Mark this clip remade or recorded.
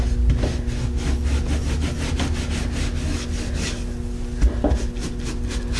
recorded